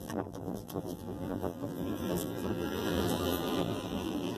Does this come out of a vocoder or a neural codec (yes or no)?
yes